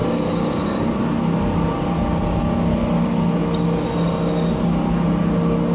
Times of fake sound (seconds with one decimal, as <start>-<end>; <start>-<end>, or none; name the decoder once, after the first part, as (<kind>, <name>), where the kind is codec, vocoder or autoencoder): none